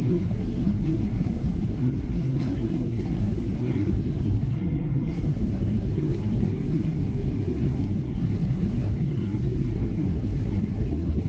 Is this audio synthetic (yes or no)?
yes